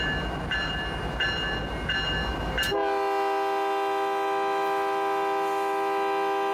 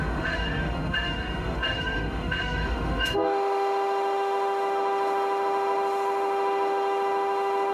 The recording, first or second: first